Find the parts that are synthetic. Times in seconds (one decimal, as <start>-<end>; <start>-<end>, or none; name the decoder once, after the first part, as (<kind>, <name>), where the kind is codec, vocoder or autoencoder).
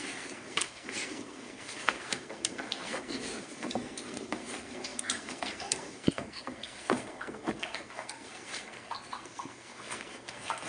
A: 0.0-10.7 (codec, SNAC)